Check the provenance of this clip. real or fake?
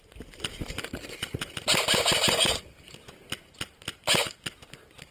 fake